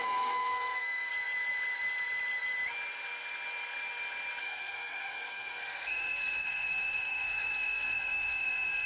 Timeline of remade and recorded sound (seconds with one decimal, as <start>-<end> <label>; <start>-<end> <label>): 0.0-1.1 remade; 1.1-4.4 recorded; 4.4-8.9 remade